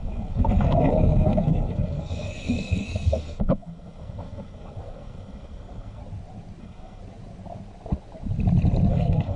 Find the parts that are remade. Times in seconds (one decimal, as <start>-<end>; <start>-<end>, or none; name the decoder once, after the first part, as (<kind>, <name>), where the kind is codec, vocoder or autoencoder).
0.0-6.0 (codec, SNAC); 6.6-7.0; 8.9-9.4